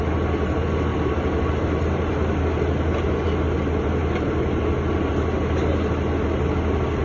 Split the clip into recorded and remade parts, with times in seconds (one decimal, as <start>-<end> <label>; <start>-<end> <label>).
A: 0.0-0.9 recorded; 0.9-2.1 remade; 2.1-7.0 recorded